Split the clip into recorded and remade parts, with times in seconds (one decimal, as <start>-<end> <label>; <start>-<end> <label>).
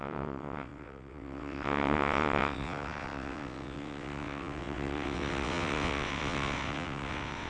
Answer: 0.0-7.5 remade